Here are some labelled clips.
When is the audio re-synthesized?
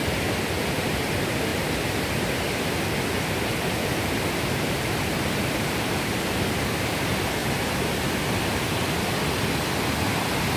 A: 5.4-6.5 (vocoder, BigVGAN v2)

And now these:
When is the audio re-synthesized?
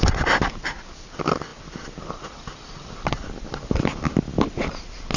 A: none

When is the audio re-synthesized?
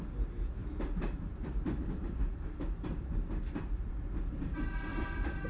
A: 0.6-3.9 (vocoder, BigVGAN v2); 4.9-5.5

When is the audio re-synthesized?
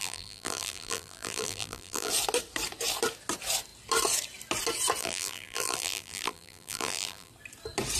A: 0.0-2.1 (vocoder, BigVGAN v2); 5.0-7.3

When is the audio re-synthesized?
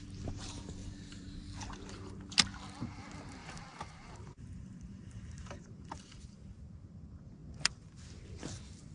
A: 0.8-1.4 (vocoder, BigVGAN v2); 3.4-6.6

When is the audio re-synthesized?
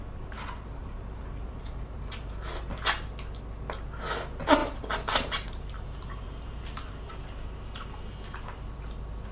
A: 0.8-2.3 (vocoder, BigVGAN v2); 4.6-7.1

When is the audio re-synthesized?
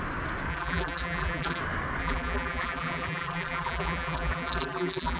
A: 0.5-1.6 (vocoder, BigVGAN v2); 2.0-5.2